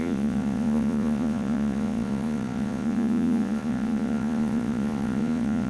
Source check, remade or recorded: remade